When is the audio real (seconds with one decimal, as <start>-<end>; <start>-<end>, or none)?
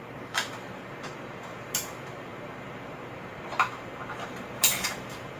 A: none